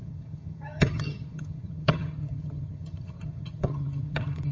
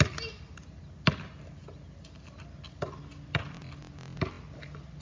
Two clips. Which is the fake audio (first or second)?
first